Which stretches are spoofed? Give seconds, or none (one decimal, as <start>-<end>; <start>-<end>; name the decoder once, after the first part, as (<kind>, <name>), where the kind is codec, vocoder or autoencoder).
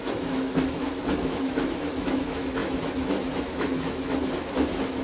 0.0-5.0 (autoencoder, DAC-VAE)